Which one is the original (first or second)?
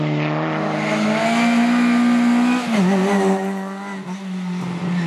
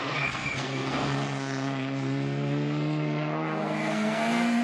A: first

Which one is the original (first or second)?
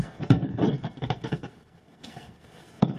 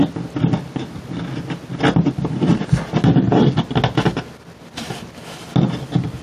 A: second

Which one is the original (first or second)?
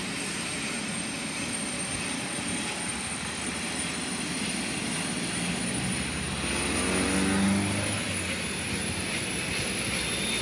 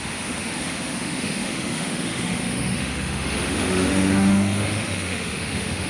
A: first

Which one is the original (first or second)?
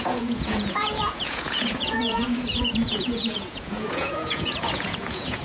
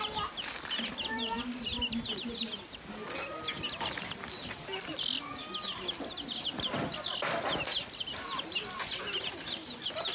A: second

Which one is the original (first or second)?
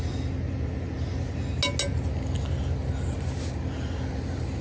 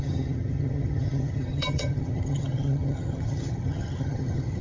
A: first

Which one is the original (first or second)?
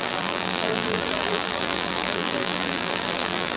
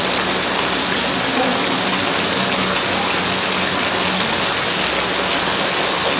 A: second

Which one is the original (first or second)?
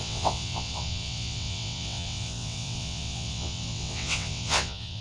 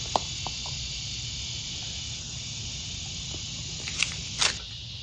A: second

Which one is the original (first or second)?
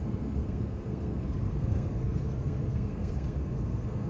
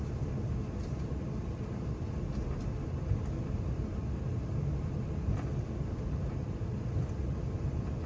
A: second